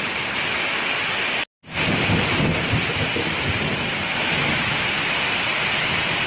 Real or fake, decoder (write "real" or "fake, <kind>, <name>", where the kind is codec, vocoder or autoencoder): real